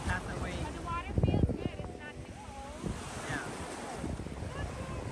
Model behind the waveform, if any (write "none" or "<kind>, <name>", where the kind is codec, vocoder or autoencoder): none